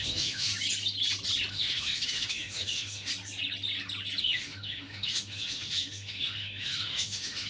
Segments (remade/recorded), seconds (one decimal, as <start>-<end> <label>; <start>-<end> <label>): 0.0-0.5 remade; 0.5-1.5 recorded; 1.5-3.1 remade; 3.1-4.2 recorded; 4.2-7.5 remade